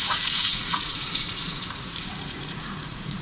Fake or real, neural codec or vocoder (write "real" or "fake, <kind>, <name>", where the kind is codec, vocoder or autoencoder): fake, vocoder, Vocos